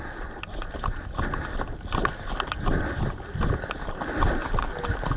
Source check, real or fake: real